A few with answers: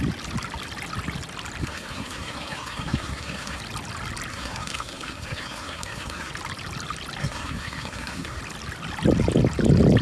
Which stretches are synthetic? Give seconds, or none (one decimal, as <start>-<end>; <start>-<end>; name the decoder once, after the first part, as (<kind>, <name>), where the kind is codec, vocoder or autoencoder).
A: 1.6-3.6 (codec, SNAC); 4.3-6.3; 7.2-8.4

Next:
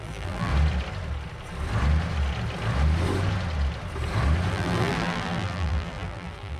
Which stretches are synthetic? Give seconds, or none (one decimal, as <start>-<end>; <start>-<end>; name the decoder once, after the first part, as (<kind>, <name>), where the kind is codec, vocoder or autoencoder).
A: 0.0-0.5 (vocoder, BigVGAN v2); 4.5-6.6

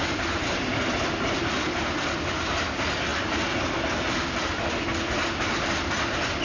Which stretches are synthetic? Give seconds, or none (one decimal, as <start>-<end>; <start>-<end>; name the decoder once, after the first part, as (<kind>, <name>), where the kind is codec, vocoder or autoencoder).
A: none